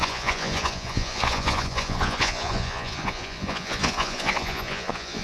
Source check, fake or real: fake